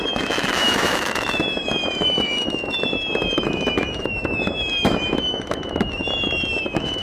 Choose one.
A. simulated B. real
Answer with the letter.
A